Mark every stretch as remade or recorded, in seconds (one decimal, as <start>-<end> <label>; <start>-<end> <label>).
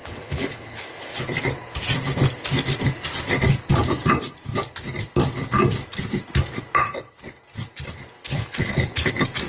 0.0-1.2 remade; 1.2-8.2 recorded; 8.2-9.1 remade; 9.1-9.5 recorded